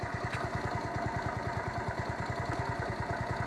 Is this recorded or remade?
recorded